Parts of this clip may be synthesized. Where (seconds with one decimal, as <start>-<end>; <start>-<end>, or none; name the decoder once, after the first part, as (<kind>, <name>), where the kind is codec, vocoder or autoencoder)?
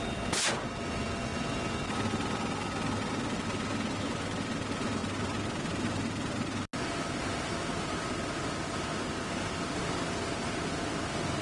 none